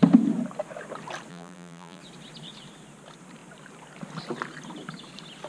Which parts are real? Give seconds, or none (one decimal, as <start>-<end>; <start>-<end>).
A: 0.0-1.3; 2.0-5.5